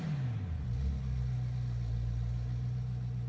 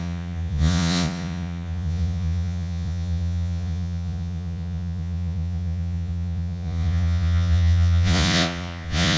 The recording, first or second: first